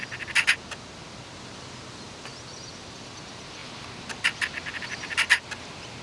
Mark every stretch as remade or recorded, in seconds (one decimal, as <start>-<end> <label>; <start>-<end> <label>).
0.0-6.0 recorded